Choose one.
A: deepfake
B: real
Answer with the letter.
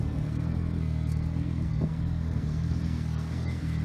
A